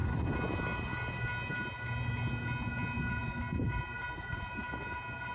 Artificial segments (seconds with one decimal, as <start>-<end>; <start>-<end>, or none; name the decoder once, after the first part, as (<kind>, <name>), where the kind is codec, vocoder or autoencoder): none